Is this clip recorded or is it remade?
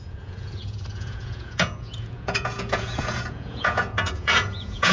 remade